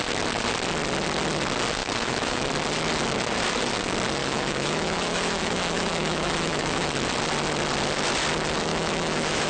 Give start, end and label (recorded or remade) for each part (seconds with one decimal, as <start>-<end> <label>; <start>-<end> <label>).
0.0-1.8 recorded; 1.8-2.4 remade; 2.4-4.2 recorded; 4.2-6.9 remade; 6.9-8.7 recorded; 8.7-9.5 remade